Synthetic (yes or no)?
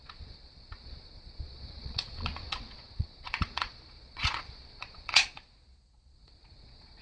yes